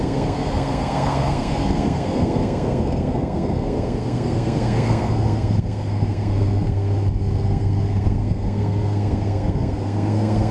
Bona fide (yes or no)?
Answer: no